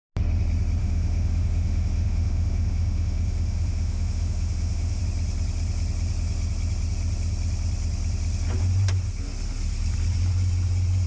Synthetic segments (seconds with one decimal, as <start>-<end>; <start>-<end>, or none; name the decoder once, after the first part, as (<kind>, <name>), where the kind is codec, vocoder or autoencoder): 0.8-5.0 (autoencoder, DAC-VAE)